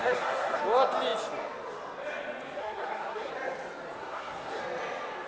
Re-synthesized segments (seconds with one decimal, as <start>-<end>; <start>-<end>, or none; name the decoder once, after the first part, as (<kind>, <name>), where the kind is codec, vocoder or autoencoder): 0.0-0.6 (codec, SNAC); 2.6-3.3; 4.0-4.6